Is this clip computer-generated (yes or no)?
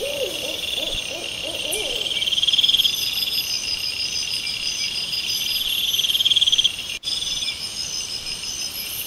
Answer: yes